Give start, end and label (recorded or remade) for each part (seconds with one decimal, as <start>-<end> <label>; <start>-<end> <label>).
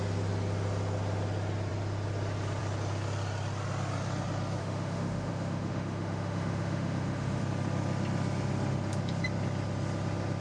0.0-4.6 recorded; 4.6-7.4 remade; 7.4-10.4 recorded